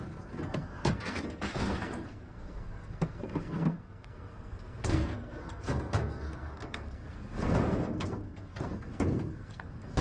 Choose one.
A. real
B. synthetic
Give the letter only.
B